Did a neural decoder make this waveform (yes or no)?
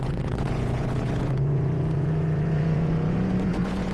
yes